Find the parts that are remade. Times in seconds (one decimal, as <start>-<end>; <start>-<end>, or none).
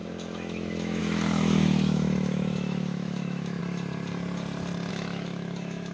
0.0-3.6; 4.9-5.9